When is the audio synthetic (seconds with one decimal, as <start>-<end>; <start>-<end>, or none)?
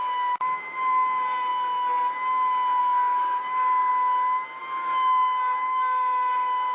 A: 0.0-1.5; 2.8-3.9; 4.6-6.7